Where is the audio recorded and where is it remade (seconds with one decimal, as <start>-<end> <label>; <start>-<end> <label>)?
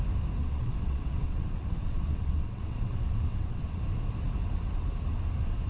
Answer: 0.0-0.4 recorded; 0.4-3.8 remade; 3.8-5.7 recorded